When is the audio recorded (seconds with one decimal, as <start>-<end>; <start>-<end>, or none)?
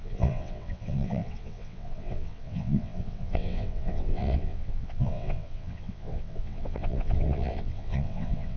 none